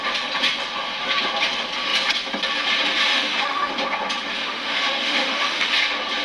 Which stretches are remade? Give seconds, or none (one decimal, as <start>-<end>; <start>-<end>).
3.1-3.7; 4.4-5.7